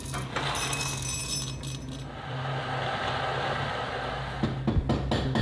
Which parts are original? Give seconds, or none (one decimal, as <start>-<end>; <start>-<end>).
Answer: 0.0-5.4